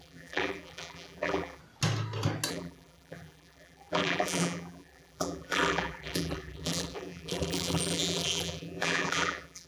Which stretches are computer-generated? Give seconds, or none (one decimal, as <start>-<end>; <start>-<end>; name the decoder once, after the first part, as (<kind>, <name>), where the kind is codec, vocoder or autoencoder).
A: 0.0-1.6 (vocoder, BigVGAN v2); 2.5-9.7